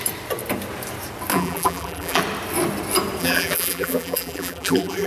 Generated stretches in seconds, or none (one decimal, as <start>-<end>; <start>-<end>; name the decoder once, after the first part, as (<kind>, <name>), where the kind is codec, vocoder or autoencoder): 1.3-2.2 (vocoder, BigVGAN v2); 3.2-5.1